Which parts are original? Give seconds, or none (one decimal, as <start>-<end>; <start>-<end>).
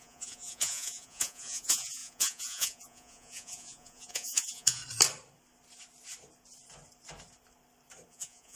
4.8-8.1